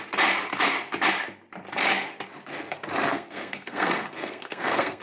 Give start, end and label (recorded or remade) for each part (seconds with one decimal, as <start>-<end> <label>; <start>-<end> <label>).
0.0-3.1 recorded; 3.1-5.0 remade